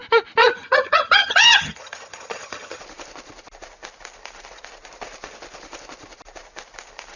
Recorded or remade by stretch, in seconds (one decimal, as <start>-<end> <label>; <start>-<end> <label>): 0.0-0.4 recorded; 0.4-2.8 remade; 2.8-7.2 recorded